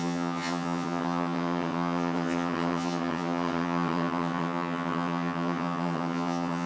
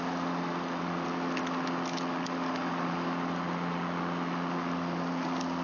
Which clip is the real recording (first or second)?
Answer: second